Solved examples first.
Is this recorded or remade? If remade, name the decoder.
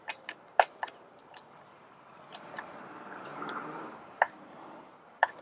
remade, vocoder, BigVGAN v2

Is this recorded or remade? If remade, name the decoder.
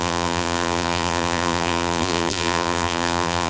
remade, vocoder, BigVGAN v2